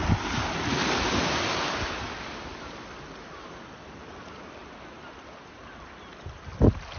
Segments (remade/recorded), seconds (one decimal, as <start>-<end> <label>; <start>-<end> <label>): 0.0-7.0 recorded